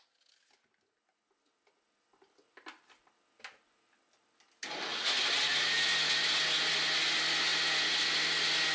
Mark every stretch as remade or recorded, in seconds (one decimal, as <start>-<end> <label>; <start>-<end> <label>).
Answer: 0.0-8.7 recorded